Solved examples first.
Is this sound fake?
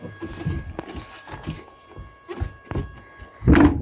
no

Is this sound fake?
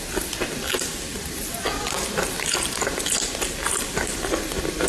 no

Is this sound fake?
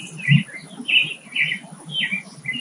no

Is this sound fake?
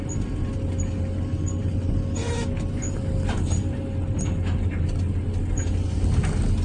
no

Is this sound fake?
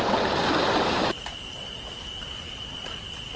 no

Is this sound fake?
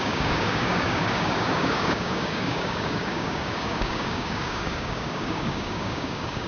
yes